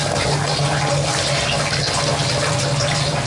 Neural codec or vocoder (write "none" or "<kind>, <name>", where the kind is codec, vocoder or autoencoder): none